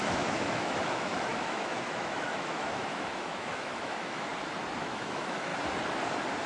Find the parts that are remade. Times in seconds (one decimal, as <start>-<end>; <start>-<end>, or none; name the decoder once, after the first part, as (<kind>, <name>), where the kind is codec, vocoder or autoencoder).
0.0-4.3 (autoencoder, DAC-VAE); 4.8-5.5